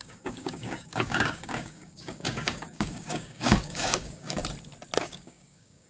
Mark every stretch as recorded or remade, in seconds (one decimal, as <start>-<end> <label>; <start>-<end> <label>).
0.0-4.4 remade; 4.4-5.0 recorded; 5.0-5.9 remade